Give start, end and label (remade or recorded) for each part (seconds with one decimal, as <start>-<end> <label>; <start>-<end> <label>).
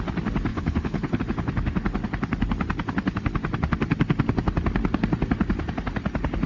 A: 0.0-0.5 recorded; 0.5-1.2 remade; 1.2-6.5 recorded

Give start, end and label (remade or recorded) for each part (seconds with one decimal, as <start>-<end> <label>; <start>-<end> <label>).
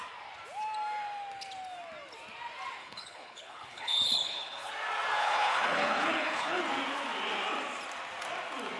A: 0.0-2.8 recorded; 2.8-4.7 remade; 4.7-5.2 recorded; 5.2-6.6 remade; 6.6-8.8 recorded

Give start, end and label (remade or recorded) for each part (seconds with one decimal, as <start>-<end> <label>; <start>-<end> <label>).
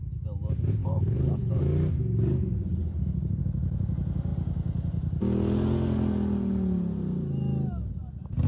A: 0.0-0.8 recorded; 0.8-1.6 remade; 1.6-2.8 recorded; 2.8-3.4 remade; 3.4-8.5 recorded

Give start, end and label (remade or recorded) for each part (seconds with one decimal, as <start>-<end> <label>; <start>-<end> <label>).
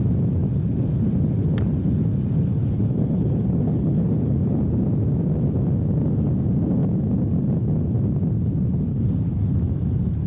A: 0.0-2.5 recorded; 2.5-4.6 remade; 4.6-8.9 recorded; 8.9-9.5 remade; 9.5-10.3 recorded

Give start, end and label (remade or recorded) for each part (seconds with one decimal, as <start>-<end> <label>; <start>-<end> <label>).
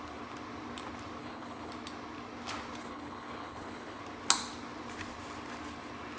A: 0.0-1.2 recorded; 1.2-1.7 remade; 1.7-2.8 recorded; 2.8-4.0 remade; 4.0-6.2 recorded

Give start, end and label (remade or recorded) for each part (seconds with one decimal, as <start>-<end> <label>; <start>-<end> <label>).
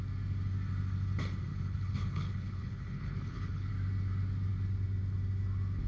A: 0.0-1.5 recorded; 1.5-3.7 remade; 3.7-5.9 recorded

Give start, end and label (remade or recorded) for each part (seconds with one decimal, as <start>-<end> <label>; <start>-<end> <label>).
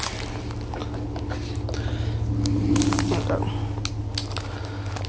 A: 0.0-5.1 recorded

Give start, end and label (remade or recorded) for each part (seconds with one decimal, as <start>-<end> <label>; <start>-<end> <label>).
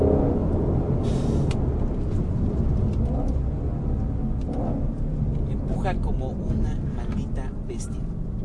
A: 0.0-8.4 recorded